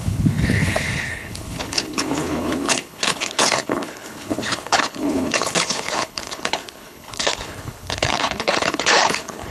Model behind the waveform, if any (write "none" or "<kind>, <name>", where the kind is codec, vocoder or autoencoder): codec, HILCodec